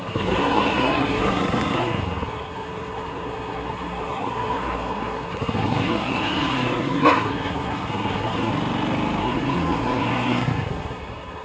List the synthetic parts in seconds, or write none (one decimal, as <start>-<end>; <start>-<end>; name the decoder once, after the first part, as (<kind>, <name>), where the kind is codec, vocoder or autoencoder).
0.0-8.5 (codec, SNAC); 9.2-11.4

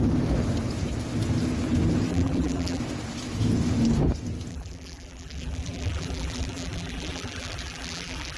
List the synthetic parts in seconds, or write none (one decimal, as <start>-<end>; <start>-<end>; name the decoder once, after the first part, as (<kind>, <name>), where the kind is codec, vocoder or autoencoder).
2.1-2.8 (vocoder, BigVGAN v2); 4.5-8.4

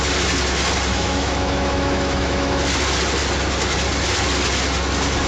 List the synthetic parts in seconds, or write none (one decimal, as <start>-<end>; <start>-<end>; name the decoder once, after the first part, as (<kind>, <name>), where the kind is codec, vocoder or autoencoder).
0.9-2.6 (autoencoder, DAC-VAE)

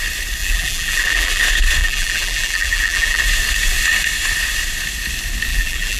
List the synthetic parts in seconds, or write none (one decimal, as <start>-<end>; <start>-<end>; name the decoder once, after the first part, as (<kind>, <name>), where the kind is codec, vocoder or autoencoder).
0.4-1.4 (vocoder, BigVGAN v2); 1.8-3.2; 5.5-6.0